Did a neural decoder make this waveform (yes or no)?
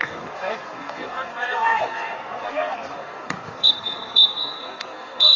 yes